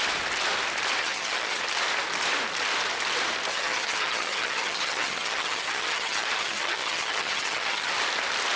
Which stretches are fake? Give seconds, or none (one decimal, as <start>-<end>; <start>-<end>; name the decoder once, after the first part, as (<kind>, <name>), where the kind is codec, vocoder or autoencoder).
1.0-1.6 (vocoder, HiFi-GAN); 3.5-7.9